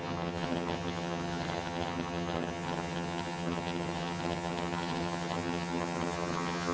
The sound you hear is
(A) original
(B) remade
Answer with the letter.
B